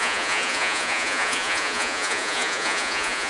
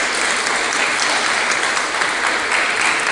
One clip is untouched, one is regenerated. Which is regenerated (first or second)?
first